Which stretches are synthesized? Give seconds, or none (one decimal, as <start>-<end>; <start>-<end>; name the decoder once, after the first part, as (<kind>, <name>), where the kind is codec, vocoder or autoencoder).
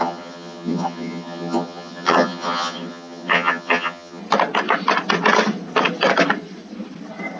0.0-4.2 (vocoder, HiFi-GAN)